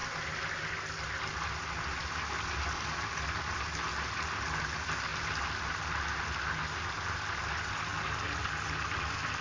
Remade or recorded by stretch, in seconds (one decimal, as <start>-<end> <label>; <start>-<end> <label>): 0.0-9.4 recorded